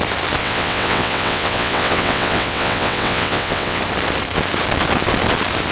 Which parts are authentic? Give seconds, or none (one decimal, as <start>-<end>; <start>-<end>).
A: 0.0-0.4; 3.8-5.7